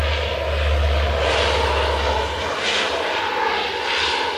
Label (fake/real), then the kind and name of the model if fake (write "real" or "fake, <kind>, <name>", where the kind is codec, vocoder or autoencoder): real